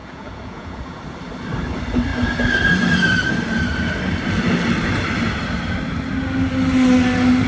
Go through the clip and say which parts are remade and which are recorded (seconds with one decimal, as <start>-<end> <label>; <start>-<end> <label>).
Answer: 0.0-1.0 remade; 1.0-7.5 recorded